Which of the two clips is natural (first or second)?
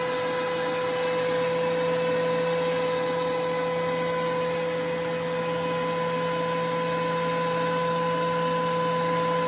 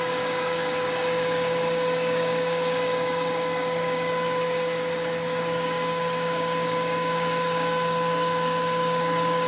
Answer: first